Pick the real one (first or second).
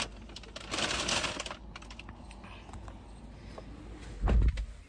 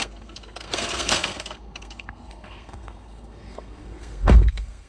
first